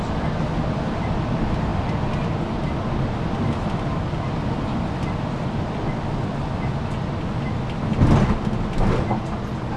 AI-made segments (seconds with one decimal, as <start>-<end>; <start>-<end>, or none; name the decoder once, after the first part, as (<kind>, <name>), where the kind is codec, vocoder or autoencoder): none